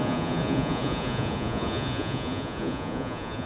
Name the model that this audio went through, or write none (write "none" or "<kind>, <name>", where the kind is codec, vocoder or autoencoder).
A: vocoder, Vocos